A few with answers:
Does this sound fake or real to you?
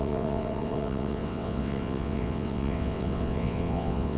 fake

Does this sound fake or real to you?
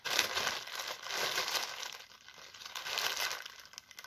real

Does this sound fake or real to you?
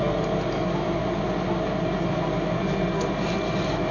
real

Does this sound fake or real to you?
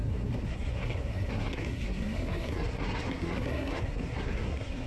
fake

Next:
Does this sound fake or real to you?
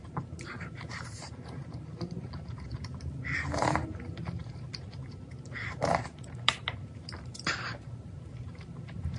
fake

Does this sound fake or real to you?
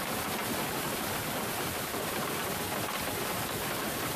real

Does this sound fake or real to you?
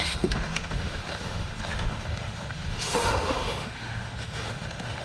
fake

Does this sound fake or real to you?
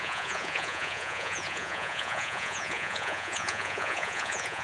fake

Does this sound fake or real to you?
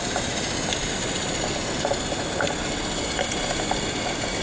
real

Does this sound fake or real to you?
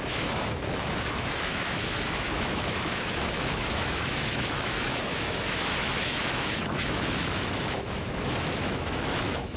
fake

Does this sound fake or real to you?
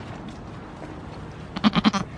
real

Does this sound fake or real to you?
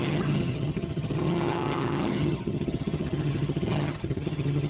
fake